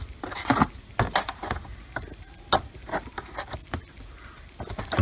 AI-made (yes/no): no